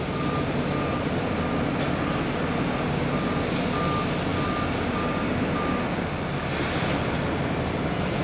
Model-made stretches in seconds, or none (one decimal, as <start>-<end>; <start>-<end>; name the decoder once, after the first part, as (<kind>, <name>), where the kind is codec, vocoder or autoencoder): none